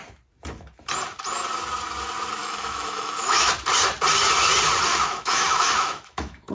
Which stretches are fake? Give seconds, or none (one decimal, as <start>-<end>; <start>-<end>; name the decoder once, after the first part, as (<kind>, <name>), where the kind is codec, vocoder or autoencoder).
2.4-3.5 (autoencoder, DAC-VAE); 4.9-6.5